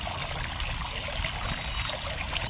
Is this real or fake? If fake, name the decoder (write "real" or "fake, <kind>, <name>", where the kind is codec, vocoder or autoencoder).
real